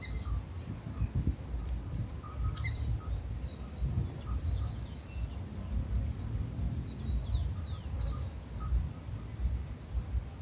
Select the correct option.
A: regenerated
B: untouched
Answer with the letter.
B